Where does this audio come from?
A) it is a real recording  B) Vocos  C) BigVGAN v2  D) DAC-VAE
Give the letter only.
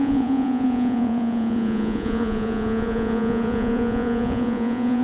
B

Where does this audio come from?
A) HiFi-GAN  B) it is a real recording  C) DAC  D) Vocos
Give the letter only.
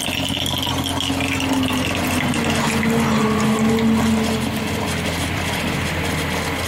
B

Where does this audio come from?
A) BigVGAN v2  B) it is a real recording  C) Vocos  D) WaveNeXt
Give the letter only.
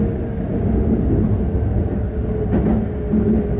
B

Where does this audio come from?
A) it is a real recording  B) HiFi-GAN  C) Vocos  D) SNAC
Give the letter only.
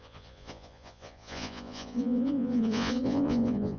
C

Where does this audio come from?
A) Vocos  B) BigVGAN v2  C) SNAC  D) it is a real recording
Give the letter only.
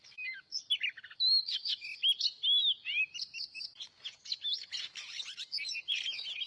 D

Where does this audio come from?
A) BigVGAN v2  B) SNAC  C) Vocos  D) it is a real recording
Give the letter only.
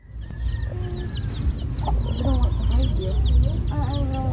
D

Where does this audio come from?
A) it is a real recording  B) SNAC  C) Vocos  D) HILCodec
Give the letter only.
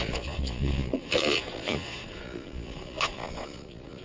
C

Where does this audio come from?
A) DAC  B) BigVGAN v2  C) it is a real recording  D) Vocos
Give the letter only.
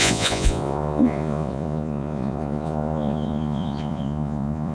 D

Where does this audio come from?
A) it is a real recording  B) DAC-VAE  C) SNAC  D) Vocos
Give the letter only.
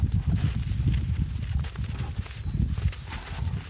A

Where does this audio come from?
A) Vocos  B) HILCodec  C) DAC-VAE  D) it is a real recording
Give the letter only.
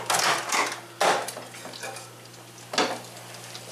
D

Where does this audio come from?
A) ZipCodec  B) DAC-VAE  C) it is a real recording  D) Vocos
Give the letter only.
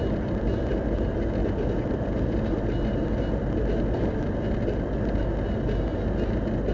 C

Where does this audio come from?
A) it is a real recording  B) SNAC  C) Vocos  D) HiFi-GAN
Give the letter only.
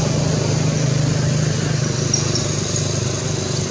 A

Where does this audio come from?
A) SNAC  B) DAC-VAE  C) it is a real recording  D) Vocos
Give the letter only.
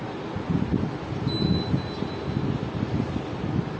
C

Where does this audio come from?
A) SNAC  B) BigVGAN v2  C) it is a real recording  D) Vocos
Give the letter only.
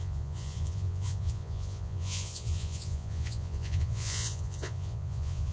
D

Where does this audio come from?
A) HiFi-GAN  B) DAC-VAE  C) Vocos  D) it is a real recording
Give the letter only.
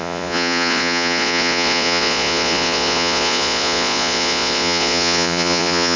C